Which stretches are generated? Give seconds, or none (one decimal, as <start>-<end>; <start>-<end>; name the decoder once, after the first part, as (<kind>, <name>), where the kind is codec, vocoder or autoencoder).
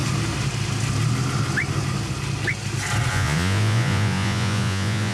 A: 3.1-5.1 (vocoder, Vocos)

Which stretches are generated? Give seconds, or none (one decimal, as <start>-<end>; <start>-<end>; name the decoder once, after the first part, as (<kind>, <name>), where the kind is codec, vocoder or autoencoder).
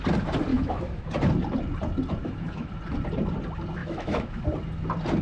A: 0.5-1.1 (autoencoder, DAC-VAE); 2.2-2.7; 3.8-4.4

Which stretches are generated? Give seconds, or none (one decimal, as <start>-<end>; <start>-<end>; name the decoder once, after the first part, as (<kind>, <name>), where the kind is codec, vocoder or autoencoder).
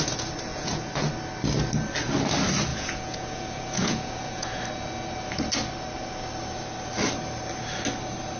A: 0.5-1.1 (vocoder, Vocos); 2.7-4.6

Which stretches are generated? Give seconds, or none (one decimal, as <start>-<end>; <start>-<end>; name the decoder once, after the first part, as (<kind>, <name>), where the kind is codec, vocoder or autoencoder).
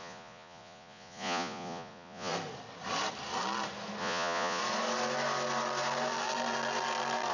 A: 0.0-2.3 (vocoder, Vocos); 4.0-4.6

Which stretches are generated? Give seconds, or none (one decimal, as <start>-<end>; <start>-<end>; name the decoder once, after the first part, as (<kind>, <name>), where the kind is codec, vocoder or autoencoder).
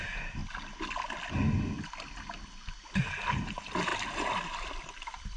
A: 0.0-0.4 (vocoder, BigVGAN v2); 3.0-3.9; 4.8-5.4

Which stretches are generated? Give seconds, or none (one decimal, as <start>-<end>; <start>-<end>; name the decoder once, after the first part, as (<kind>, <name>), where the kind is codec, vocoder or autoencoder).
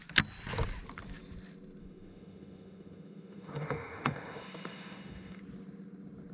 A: 1.8-5.4 (autoencoder, DAC-VAE)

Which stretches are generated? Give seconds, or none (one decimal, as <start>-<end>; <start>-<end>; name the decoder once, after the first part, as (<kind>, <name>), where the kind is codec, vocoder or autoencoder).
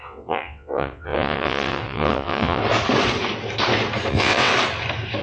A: 0.0-2.6 (vocoder, WaveNeXt); 4.1-4.5